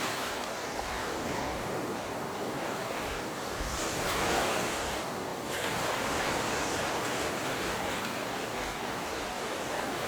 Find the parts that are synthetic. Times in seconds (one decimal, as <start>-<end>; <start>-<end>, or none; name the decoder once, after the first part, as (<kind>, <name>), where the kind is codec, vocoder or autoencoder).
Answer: 0.0-10.1 (codec, DAC)

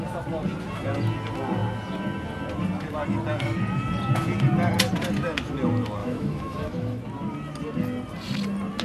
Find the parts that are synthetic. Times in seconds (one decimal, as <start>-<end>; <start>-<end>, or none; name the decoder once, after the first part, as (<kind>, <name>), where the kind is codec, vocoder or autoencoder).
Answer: 6.0-7.0 (autoencoder, DAC-VAE)

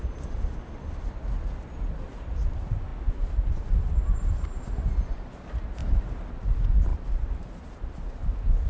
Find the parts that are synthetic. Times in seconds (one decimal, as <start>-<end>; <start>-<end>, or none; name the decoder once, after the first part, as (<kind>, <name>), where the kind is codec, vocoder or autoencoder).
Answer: 5.8-6.3 (vocoder, BigVGAN v2); 6.9-8.1

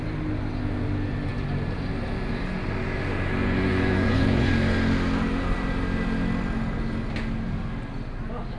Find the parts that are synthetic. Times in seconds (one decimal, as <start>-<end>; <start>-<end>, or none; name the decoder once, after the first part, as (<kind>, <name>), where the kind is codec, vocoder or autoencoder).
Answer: 3.4-4.5 (vocoder, Vocos)